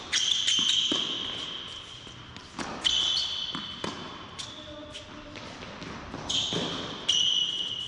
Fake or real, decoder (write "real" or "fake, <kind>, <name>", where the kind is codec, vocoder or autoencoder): real